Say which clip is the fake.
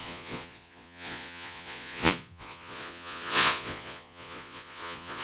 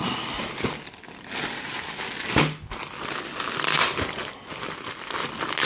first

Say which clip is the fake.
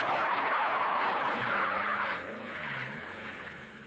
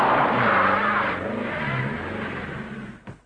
first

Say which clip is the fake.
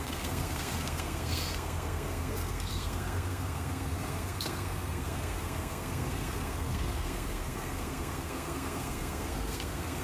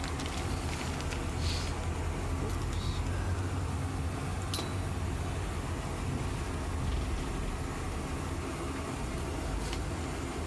first